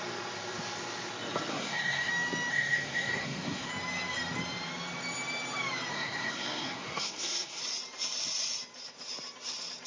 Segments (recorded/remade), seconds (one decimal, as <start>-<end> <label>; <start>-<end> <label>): 0.0-1.5 recorded; 1.5-2.1 remade; 2.1-2.5 recorded; 2.5-3.7 remade; 3.7-5.9 recorded; 5.9-7.6 remade; 7.6-9.9 recorded